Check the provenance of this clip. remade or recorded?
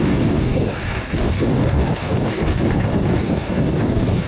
remade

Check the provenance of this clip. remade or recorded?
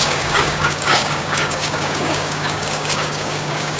remade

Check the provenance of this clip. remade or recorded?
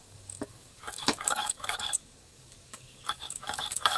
remade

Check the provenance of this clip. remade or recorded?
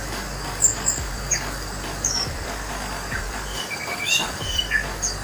remade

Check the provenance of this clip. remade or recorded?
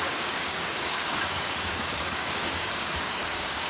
remade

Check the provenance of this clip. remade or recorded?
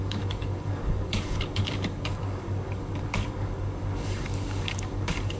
remade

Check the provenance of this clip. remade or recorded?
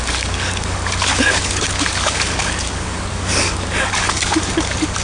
remade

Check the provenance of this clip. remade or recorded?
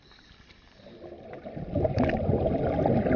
recorded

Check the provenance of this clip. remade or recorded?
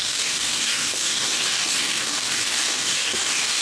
remade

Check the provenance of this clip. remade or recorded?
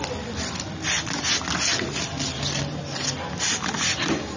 recorded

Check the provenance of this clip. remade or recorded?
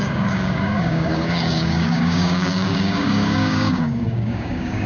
remade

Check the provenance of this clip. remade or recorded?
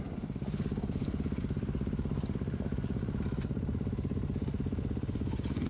recorded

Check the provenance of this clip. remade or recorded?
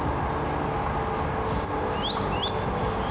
recorded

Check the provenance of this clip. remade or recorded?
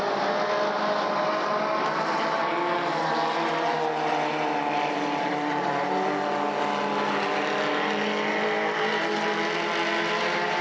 recorded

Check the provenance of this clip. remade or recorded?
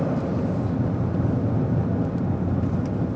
recorded